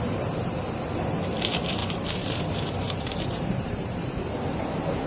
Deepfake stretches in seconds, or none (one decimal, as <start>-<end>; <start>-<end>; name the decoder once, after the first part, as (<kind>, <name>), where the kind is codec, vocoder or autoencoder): 1.8-5.1 (vocoder, BigVGAN v2)